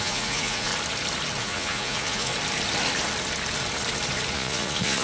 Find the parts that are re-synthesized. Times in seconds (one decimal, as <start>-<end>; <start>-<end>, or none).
0.0-0.7; 1.4-2.3; 4.3-5.0